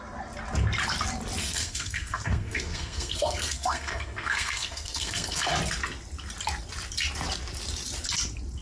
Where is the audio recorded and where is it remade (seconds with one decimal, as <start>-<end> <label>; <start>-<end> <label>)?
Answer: 0.0-1.4 recorded; 1.4-5.5 remade; 5.5-8.6 recorded